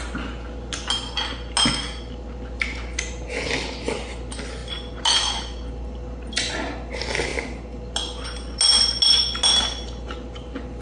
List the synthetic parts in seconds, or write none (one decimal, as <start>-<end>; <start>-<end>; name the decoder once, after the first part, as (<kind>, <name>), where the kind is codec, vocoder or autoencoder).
none